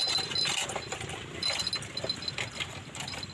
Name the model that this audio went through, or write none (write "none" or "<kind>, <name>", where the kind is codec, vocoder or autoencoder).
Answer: none